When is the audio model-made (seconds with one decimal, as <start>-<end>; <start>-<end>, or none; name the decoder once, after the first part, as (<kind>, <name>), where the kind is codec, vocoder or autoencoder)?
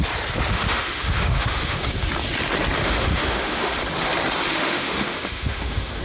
0.5-1.8 (autoencoder, DAC-VAE); 2.8-3.8; 4.5-6.0